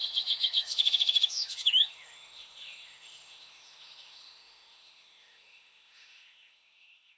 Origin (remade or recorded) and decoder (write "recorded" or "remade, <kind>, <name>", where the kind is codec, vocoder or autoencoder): remade, autoencoder, DAC-VAE